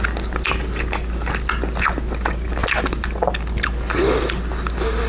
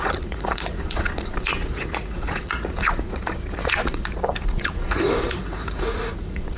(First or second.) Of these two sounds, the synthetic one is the second